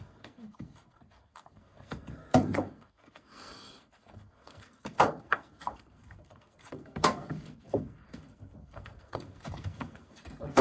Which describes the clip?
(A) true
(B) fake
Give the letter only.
B